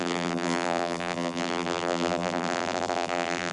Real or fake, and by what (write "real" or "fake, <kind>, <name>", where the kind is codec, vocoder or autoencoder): fake, vocoder, BigVGAN v2